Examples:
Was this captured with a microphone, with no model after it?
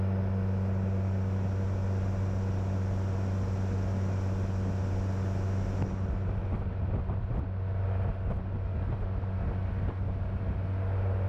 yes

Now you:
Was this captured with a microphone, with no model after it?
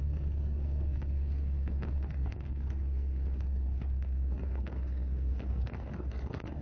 no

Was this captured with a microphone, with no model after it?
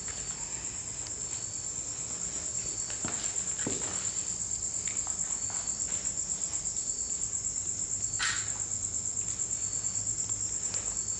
yes